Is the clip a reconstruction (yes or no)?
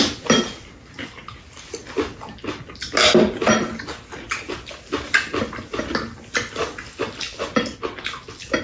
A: no